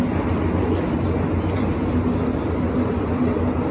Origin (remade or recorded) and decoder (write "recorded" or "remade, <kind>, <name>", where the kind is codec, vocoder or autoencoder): recorded